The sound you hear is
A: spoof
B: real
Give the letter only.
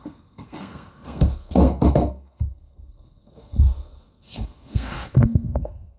A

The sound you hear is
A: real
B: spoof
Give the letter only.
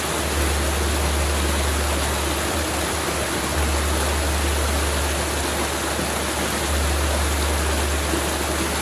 A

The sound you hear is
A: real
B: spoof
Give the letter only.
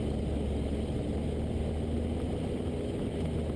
A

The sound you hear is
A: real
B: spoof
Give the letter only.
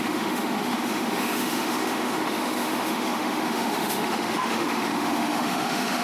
B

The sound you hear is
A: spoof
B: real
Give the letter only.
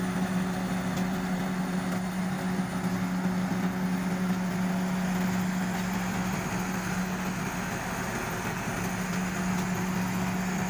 B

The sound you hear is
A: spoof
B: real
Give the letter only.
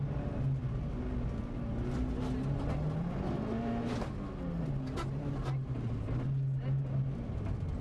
B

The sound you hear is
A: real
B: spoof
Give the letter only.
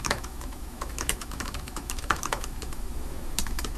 B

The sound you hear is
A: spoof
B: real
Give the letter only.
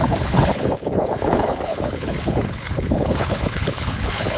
A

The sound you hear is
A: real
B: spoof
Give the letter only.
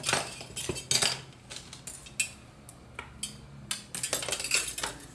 A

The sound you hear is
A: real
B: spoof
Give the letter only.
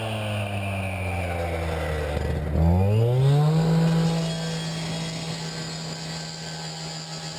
A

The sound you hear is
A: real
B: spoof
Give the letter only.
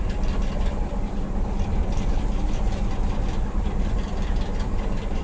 A